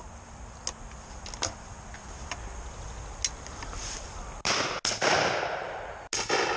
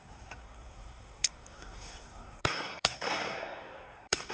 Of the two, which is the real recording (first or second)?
first